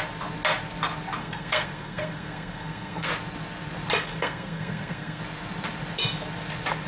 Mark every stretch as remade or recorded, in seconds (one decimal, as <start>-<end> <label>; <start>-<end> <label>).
0.0-1.2 recorded; 1.2-3.1 remade; 3.1-4.0 recorded; 4.0-5.2 remade; 5.2-6.9 recorded